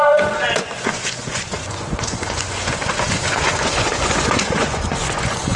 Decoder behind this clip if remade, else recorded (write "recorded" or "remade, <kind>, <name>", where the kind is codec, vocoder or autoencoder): remade, vocoder, Vocos